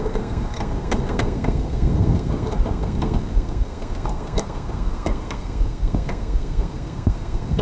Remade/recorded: remade